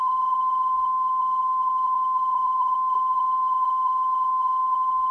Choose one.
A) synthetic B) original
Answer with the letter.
A